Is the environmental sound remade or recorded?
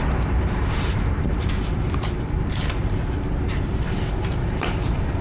remade